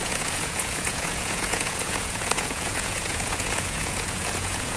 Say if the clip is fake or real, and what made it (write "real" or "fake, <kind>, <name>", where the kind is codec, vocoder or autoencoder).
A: fake, vocoder, Vocos